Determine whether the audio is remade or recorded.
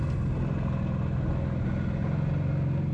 recorded